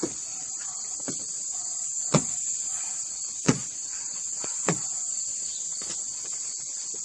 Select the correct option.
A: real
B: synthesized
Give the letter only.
B